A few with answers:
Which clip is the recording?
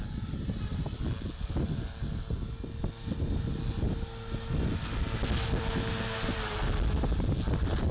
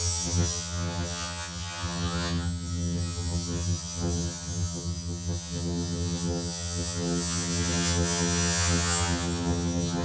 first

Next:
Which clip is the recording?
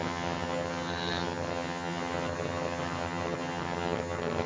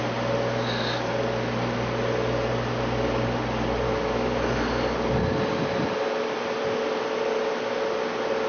second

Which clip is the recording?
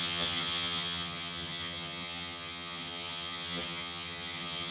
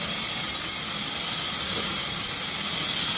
second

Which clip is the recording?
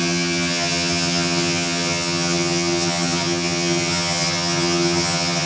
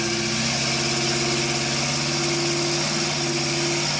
second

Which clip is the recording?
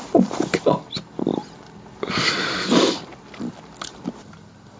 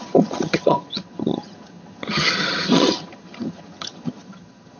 first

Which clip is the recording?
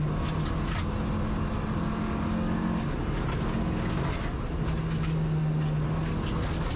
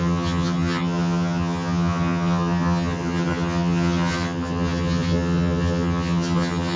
first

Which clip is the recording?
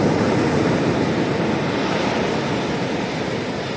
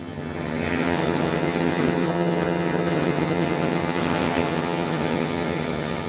first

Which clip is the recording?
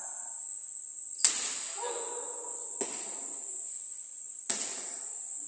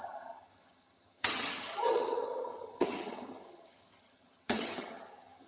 first